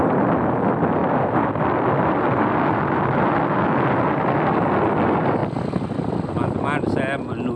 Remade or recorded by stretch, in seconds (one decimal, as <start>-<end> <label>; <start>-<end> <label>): 0.0-7.6 recorded